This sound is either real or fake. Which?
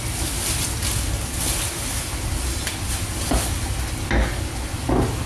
real